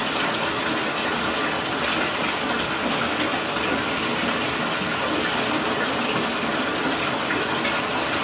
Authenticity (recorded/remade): recorded